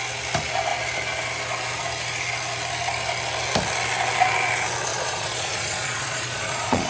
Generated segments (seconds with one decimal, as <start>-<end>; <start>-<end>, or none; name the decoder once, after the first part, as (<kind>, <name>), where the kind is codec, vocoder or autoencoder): 4.9-6.9 (vocoder, Vocos)